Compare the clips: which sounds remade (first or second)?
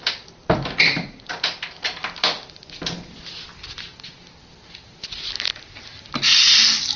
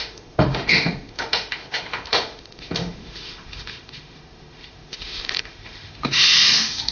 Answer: second